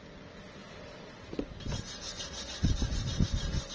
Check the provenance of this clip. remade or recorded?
recorded